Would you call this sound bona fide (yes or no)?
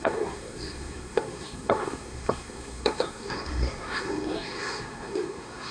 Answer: no